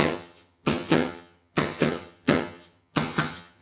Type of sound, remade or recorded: remade